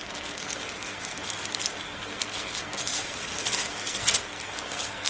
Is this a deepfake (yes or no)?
yes